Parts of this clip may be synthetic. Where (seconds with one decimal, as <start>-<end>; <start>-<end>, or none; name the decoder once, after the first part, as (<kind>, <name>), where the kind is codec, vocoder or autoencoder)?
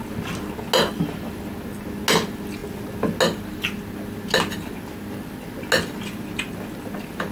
none